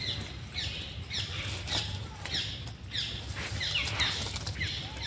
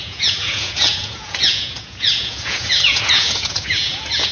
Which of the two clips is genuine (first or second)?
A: first